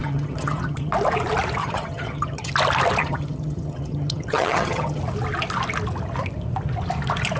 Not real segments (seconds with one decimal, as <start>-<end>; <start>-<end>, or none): 0.0-0.9; 1.6-2.5; 3.0-5.0

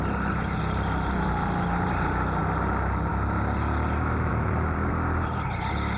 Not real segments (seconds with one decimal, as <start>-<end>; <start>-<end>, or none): 4.3-4.9

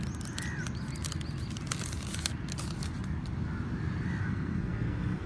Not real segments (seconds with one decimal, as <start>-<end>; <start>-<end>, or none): 4.2-5.3

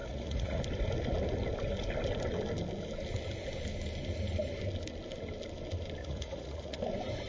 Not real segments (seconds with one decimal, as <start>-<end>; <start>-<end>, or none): 0.0-0.6; 6.0-6.8

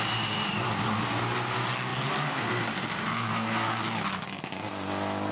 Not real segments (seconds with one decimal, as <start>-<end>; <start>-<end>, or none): none

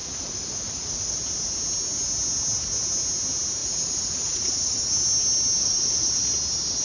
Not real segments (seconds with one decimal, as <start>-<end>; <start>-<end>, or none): 0.0-1.2; 3.6-4.8; 5.6-6.2